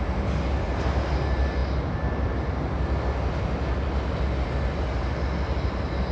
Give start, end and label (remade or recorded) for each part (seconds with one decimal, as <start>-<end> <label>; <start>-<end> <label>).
0.0-6.1 recorded